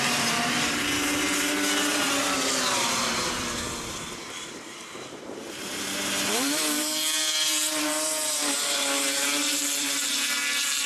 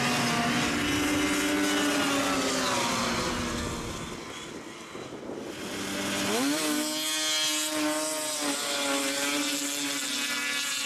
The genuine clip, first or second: second